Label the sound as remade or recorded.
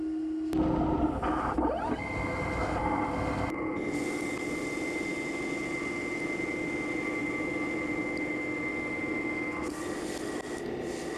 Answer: recorded